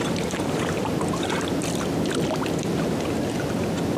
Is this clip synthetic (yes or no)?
no